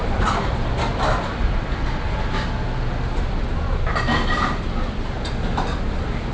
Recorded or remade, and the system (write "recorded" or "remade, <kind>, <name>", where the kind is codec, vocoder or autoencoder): recorded